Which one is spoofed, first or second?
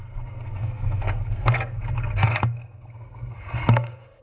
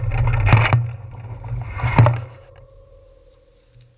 first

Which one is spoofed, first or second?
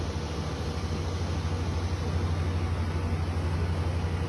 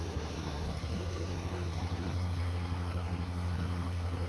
second